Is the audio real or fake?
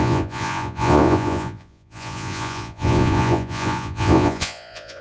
fake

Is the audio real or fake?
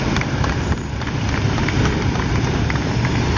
fake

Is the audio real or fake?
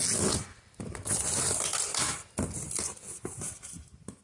real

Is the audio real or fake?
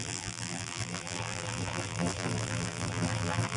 fake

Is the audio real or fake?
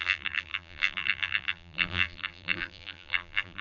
fake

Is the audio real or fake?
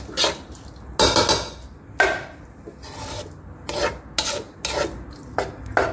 real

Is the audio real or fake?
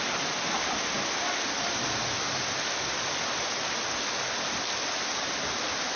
real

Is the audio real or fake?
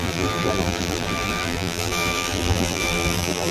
fake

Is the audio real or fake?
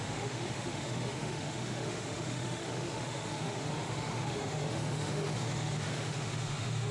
fake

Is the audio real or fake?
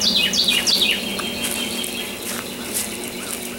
real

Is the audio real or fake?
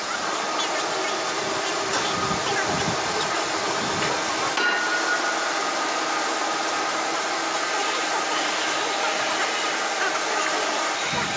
real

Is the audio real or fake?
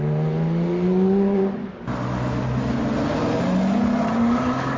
real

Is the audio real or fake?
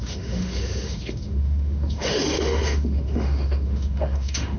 fake